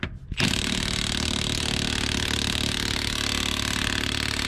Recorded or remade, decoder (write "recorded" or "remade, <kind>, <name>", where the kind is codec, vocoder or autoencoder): recorded